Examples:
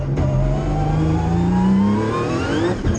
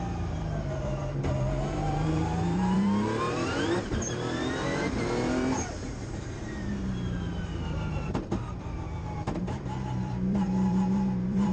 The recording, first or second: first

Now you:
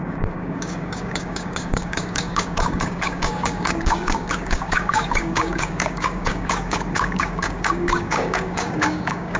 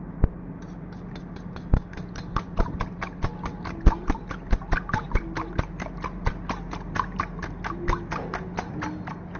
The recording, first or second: second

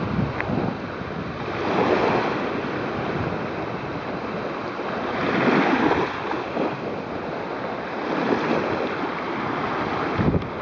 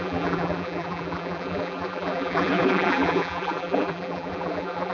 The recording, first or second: first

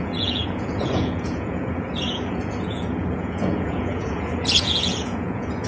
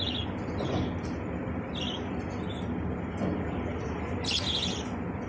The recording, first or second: second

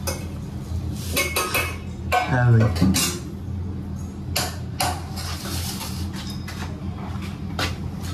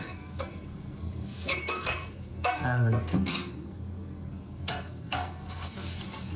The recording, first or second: first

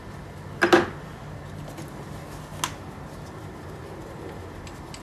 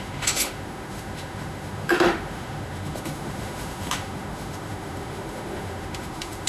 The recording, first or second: first